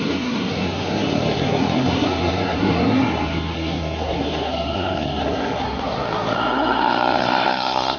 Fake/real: fake